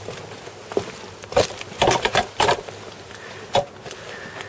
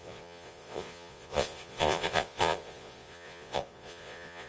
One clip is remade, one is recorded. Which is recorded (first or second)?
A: first